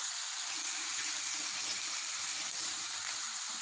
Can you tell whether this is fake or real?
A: fake